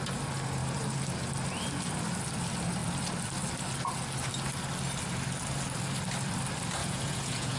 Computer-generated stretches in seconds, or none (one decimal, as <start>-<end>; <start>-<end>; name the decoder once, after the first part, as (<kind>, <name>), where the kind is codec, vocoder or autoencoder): 6.8-7.6 (vocoder, Vocos)